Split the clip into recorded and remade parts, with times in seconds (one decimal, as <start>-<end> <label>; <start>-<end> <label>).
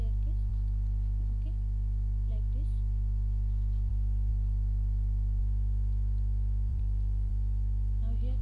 0.0-6.7 recorded; 6.7-7.3 remade; 7.3-8.4 recorded